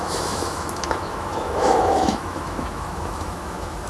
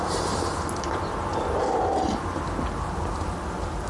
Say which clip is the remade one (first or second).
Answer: first